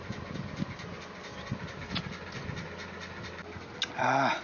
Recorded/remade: recorded